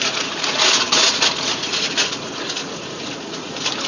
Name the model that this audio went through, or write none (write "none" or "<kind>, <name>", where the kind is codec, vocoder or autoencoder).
vocoder, Vocos